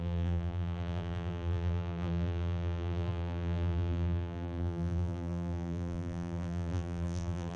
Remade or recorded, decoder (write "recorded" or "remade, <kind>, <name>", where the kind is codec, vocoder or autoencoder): remade, vocoder, BigVGAN v2